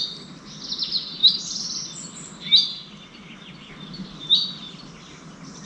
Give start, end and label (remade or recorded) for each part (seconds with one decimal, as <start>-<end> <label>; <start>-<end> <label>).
0.0-5.7 recorded